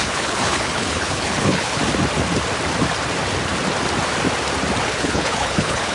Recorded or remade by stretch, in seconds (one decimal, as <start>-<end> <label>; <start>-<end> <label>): 0.0-1.8 remade; 1.8-4.8 recorded; 4.8-5.9 remade